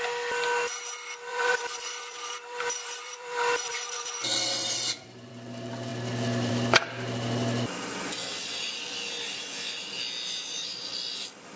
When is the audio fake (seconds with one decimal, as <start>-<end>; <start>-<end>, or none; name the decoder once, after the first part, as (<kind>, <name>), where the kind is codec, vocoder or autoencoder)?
1.3-5.3 (vocoder, BigVGAN v2)

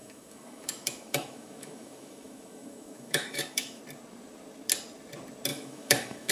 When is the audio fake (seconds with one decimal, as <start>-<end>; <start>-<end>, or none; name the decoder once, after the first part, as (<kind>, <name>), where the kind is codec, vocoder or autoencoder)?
0.0-3.8 (autoencoder, DAC-VAE); 5.5-6.3